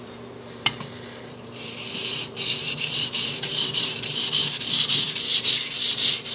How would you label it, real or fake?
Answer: fake